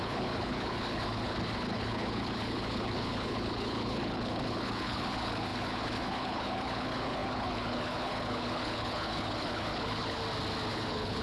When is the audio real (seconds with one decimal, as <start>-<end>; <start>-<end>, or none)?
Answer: 10.2-10.7